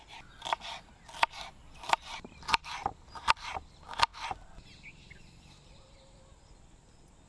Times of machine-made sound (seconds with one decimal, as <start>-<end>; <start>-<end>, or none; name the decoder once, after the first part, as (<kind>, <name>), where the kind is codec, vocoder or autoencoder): 1.6-2.4 (vocoder, BigVGAN v2); 2.8-3.5